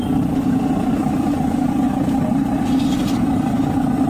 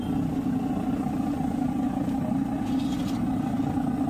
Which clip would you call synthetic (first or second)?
first